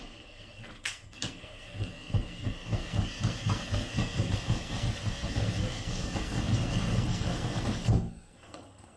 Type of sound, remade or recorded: remade